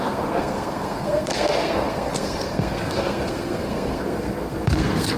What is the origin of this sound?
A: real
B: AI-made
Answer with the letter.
B